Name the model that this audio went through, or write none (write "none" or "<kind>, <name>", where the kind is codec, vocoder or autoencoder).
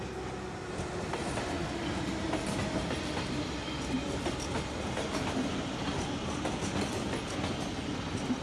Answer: none